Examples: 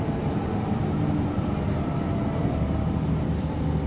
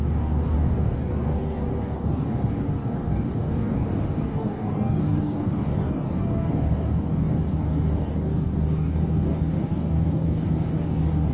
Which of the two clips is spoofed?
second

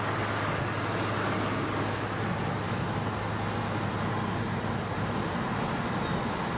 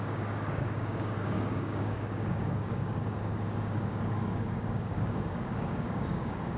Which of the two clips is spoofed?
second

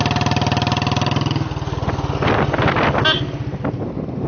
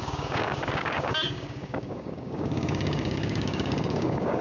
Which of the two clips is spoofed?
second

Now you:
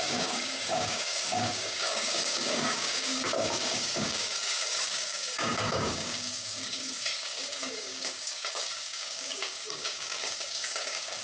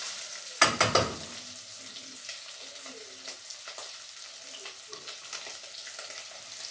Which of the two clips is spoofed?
first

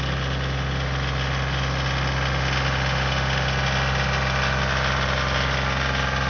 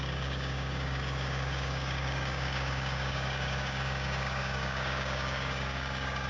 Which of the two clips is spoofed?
second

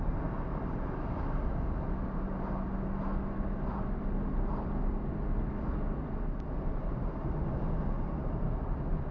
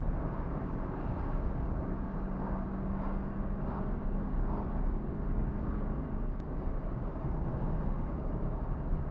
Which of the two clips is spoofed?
second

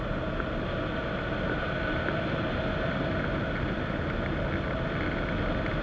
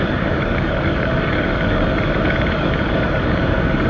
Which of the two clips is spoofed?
second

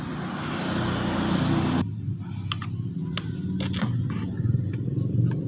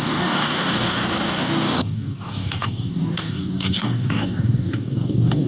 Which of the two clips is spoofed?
second